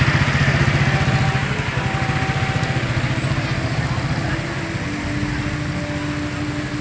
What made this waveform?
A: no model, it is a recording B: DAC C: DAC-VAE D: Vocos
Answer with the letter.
A